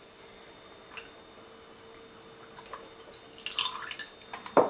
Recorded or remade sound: recorded